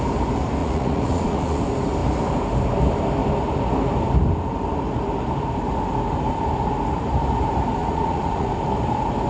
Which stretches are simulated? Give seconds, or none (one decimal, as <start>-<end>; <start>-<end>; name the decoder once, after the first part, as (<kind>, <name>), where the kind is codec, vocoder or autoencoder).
0.6-1.6 (vocoder, Vocos); 7.8-8.5